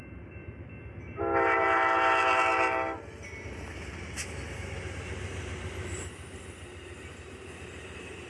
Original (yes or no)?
yes